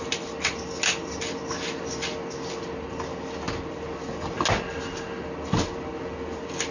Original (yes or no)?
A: yes